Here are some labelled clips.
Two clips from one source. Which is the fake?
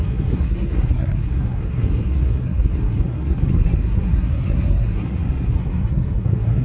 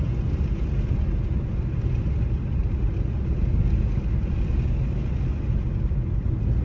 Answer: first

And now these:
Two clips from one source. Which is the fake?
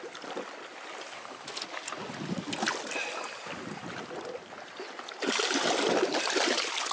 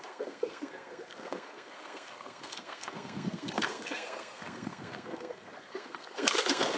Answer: second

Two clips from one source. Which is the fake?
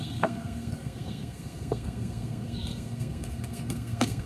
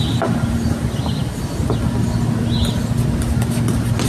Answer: first